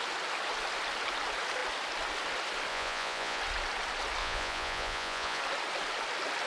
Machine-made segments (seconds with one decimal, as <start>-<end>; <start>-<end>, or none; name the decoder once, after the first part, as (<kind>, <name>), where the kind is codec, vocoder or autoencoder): 2.7-3.4 (vocoder, Vocos); 4.2-5.4